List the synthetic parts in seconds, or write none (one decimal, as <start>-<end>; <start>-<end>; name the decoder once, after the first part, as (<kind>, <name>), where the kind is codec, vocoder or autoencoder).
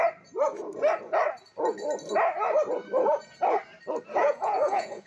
4.2-5.1 (vocoder, Vocos)